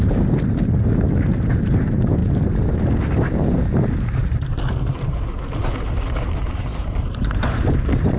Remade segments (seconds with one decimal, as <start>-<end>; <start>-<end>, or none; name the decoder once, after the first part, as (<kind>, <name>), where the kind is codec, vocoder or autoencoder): 0.0-2.2 (vocoder, BigVGAN v2); 6.4-8.2